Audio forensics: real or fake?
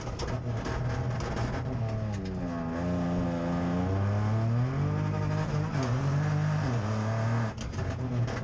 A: real